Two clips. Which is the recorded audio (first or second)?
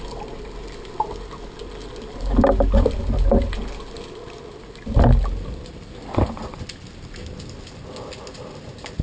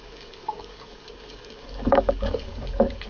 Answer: first